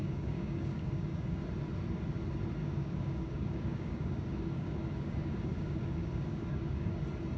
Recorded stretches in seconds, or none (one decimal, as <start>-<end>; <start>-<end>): 1.4-2.6; 7.0-7.4